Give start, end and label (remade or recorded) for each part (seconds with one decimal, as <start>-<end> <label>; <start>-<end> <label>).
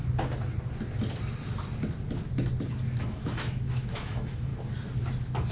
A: 0.0-3.0 recorded; 3.0-4.5 remade; 4.5-5.5 recorded